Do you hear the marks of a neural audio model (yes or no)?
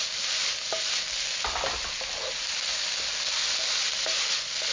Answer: no